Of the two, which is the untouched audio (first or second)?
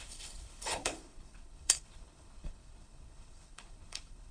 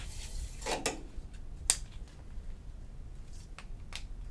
second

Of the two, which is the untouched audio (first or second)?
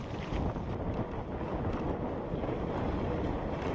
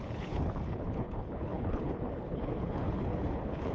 first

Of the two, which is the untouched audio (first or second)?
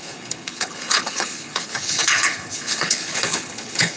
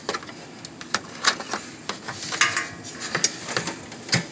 second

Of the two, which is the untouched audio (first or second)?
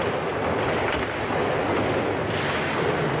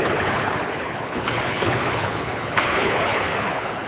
first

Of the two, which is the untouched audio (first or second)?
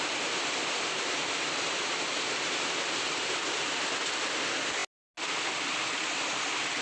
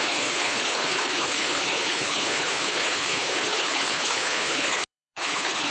first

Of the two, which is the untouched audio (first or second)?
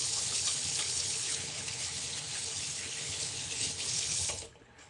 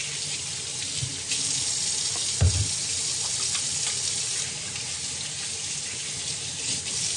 second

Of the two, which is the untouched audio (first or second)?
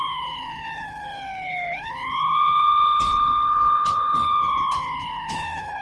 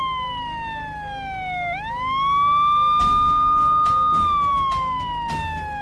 second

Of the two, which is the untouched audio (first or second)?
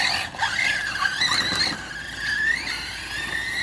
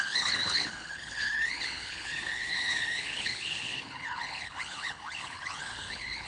first